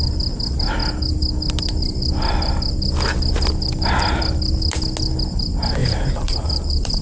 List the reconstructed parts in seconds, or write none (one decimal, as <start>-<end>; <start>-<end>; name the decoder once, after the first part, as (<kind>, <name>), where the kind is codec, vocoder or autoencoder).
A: 5.8-7.0 (vocoder, BigVGAN v2)